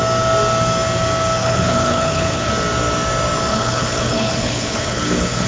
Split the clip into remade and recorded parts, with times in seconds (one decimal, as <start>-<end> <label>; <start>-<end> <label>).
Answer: 0.0-1.4 recorded; 1.4-2.5 remade; 2.5-3.5 recorded; 3.5-5.5 remade